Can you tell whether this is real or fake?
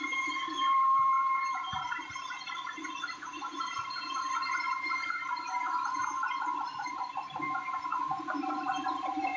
fake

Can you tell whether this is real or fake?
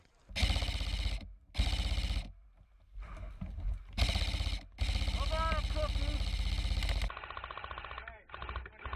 real